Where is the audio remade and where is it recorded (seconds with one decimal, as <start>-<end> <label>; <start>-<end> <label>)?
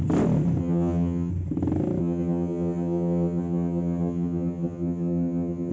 0.0-0.6 recorded; 0.6-1.3 remade; 1.3-2.0 recorded; 2.0-5.7 remade